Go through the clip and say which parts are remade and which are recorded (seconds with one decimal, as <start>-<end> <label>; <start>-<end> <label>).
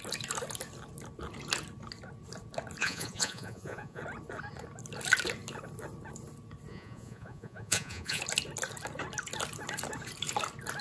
0.0-2.8 recorded; 2.8-4.0 remade; 4.0-6.7 recorded; 6.7-8.2 remade; 8.2-10.8 recorded